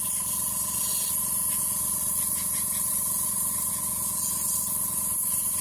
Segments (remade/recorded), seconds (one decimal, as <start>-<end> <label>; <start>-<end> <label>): 0.0-5.6 recorded